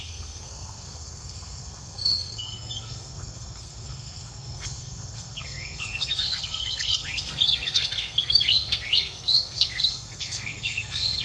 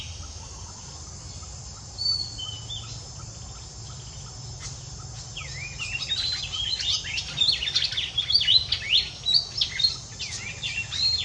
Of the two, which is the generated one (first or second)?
first